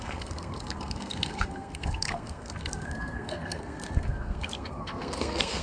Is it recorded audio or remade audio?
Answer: remade